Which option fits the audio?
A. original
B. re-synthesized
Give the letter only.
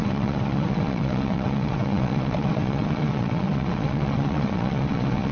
B